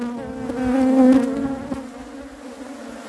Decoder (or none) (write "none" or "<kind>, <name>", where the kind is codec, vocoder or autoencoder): none